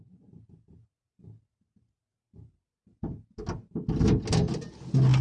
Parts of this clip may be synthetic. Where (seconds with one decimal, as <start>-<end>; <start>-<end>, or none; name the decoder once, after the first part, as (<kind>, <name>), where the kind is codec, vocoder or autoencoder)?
none